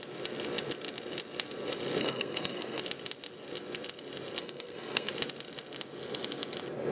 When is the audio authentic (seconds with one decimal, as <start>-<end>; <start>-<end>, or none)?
0.0-2.0; 2.8-4.4; 5.1-6.9